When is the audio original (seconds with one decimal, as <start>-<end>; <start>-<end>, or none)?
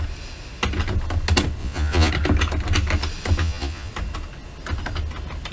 0.0-1.6; 2.1-3.4; 3.9-5.5